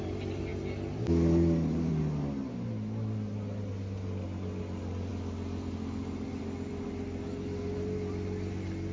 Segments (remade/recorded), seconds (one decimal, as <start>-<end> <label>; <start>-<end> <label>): 0.0-8.9 recorded